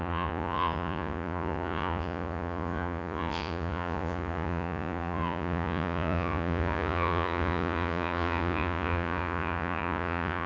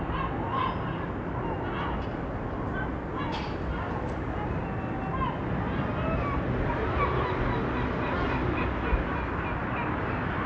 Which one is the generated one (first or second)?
first